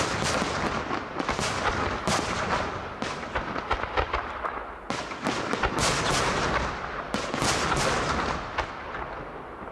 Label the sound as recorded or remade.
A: recorded